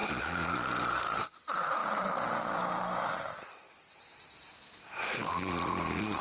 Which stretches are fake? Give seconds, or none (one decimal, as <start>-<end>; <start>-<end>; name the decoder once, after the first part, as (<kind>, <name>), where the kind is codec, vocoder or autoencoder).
0.9-6.2 (vocoder, BigVGAN v2)